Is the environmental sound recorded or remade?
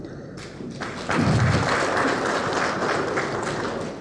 recorded